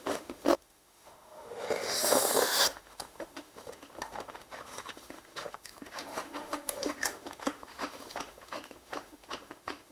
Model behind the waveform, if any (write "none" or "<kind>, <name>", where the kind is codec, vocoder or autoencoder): autoencoder, DAC-VAE